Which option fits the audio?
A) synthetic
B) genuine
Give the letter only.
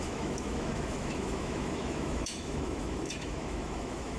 A